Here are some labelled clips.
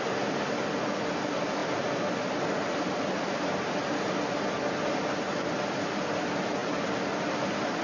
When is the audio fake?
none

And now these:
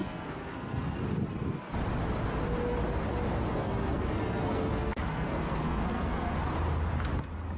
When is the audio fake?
0.0-1.0 (codec, SNAC); 3.5-6.3

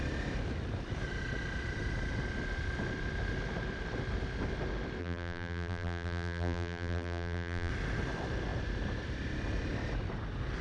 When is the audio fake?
5.0-7.7 (vocoder, BigVGAN v2)

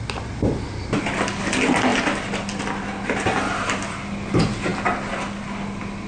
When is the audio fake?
none

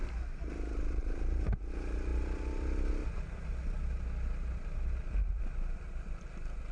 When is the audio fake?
1.0-1.7 (vocoder, BigVGAN v2)